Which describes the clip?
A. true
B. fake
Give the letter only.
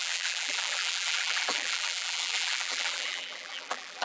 B